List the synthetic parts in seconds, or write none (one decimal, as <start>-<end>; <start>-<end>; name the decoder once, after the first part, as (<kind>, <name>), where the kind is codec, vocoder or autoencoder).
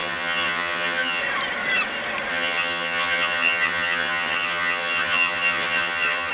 0.0-1.2 (vocoder, HiFi-GAN); 2.3-6.3